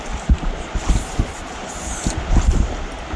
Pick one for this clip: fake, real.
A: real